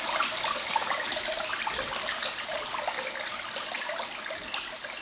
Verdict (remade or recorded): recorded